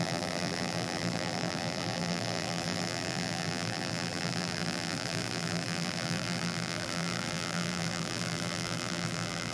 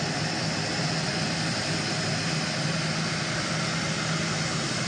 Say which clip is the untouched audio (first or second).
second